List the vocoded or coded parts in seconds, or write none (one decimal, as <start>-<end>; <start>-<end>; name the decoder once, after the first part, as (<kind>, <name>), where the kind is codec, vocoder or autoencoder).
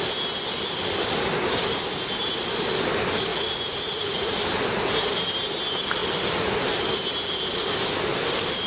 3.3-4.4 (vocoder, Vocos)